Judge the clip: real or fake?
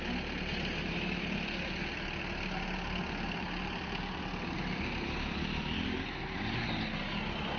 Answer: real